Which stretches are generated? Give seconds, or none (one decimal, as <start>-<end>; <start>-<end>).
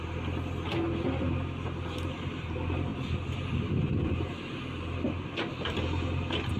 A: none